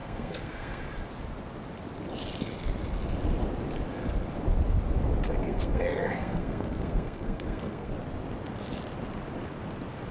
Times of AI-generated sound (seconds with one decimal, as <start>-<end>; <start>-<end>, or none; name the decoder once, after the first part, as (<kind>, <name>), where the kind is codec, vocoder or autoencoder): 0.0-0.8 (codec, SNAC); 5.4-7.9